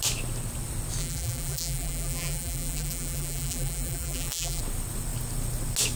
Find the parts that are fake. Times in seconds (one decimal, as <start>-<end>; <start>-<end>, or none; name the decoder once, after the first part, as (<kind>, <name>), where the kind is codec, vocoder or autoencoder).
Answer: 1.0-4.6 (vocoder, BigVGAN v2)